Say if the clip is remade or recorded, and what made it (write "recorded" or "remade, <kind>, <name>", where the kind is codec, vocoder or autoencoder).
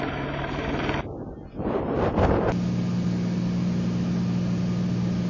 recorded